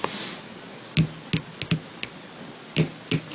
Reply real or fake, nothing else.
real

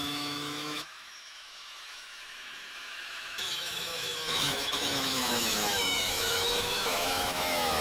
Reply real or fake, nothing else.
fake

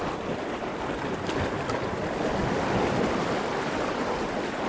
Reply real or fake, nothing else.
real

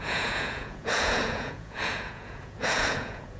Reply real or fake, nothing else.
fake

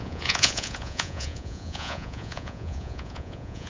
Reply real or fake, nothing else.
fake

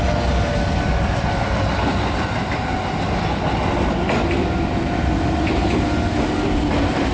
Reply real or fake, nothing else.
real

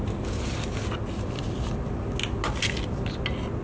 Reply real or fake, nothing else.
real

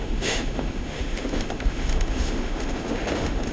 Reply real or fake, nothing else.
fake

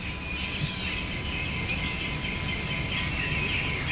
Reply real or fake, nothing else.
real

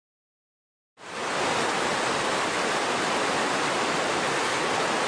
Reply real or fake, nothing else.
real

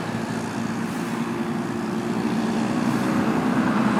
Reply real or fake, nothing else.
real